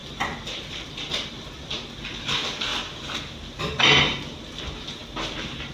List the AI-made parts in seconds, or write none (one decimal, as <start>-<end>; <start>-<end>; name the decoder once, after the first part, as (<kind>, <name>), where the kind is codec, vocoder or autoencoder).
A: 0.0-1.1 (vocoder, BigVGAN v2); 5.0-5.7